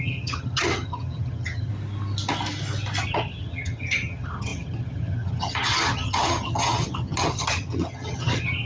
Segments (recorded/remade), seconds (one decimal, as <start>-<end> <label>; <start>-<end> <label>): 0.0-1.7 remade; 1.7-3.0 recorded; 3.0-8.7 remade